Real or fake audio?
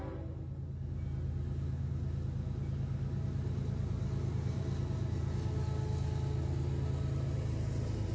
real